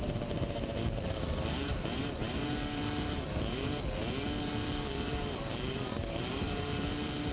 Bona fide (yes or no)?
no